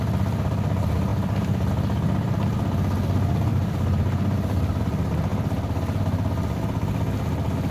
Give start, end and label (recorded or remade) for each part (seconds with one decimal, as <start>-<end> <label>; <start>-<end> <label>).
0.0-1.1 recorded; 1.1-1.7 remade; 1.7-3.5 recorded; 3.5-4.8 remade; 4.8-7.7 recorded

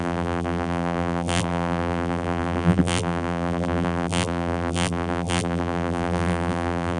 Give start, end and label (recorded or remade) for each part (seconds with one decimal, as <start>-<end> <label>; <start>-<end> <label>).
0.0-7.0 remade

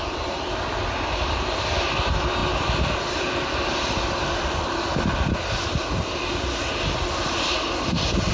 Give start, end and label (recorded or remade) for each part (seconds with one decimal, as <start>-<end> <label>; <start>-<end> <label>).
0.0-2.4 recorded; 2.4-3.2 remade; 3.2-8.3 recorded

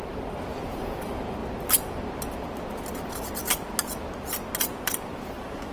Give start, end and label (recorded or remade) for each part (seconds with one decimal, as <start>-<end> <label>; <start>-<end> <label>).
0.0-1.4 remade; 1.4-4.6 recorded; 4.6-5.7 remade

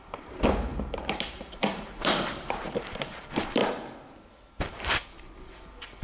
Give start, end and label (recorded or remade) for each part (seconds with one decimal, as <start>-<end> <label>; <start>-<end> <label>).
0.0-3.6 remade; 3.6-4.6 recorded; 4.6-6.0 remade

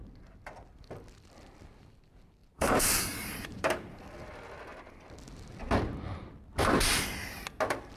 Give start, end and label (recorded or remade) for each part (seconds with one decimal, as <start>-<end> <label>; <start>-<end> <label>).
0.0-2.4 recorded; 2.4-4.0 remade; 4.0-8.0 recorded

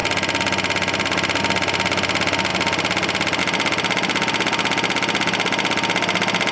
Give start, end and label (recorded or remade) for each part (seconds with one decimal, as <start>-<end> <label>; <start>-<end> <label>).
0.0-6.5 recorded

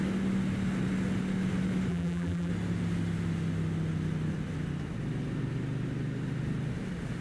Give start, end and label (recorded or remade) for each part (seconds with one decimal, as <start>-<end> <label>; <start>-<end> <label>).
0.0-1.9 recorded; 1.9-2.5 remade; 2.5-7.2 recorded